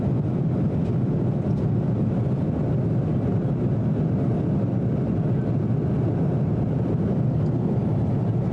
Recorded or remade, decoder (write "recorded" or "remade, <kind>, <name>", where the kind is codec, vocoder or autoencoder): recorded